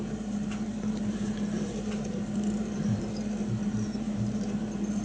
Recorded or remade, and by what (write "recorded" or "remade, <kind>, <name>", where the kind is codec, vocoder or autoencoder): remade, vocoder, BigVGAN v2